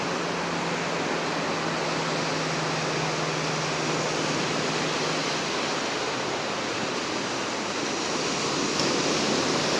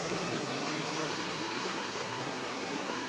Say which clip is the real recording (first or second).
first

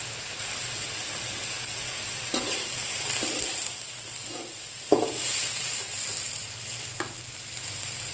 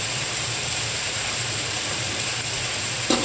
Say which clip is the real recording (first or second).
first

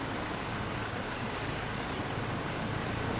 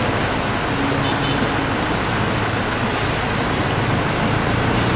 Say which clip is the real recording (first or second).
second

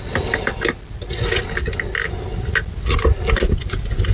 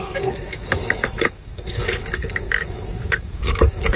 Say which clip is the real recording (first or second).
first